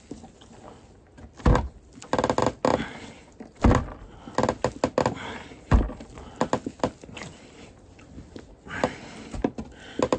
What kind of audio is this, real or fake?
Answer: real